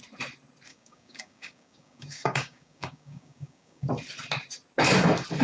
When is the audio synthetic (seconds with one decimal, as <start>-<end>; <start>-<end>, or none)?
0.7-3.9